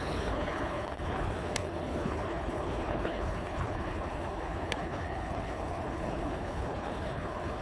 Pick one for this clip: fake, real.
fake